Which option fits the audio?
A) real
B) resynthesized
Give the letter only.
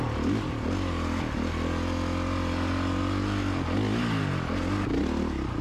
A